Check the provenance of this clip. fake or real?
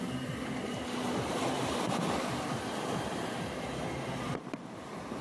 fake